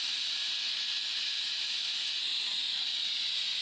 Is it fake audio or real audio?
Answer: real